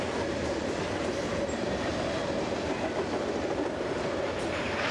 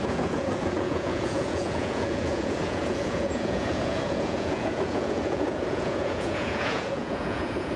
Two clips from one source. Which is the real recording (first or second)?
first